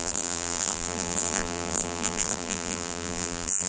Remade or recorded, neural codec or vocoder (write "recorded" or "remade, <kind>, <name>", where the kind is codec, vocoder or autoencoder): remade, vocoder, BigVGAN v2